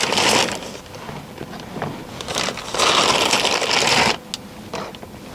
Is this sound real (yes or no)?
yes